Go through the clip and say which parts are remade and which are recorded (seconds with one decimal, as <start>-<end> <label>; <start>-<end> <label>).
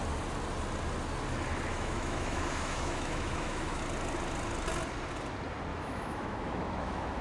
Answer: 0.0-1.7 recorded; 1.7-3.8 remade; 3.8-5.7 recorded; 5.7-7.2 remade